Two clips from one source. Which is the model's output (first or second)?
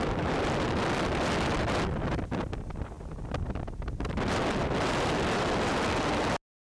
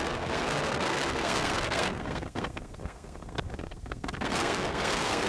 second